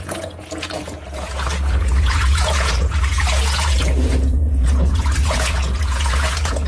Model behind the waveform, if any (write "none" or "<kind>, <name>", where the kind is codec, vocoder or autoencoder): vocoder, Vocos